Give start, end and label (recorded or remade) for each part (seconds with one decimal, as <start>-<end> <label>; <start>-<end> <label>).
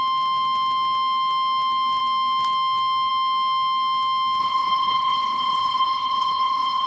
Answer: 0.0-4.4 recorded; 4.4-6.9 remade